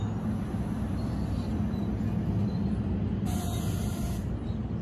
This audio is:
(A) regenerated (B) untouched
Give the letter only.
B